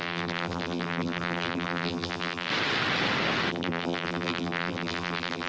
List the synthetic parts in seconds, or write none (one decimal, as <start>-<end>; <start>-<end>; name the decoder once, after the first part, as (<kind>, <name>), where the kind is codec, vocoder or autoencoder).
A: 0.0-2.5 (vocoder, BigVGAN v2); 3.5-5.5